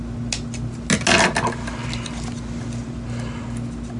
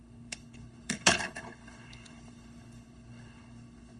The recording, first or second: first